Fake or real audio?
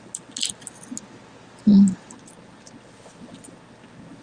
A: real